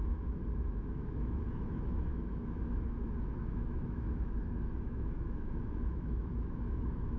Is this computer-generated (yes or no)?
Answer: yes